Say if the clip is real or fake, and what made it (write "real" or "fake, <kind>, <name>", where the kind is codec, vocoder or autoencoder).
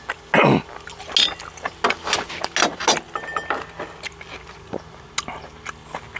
real